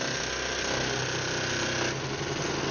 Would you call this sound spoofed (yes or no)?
no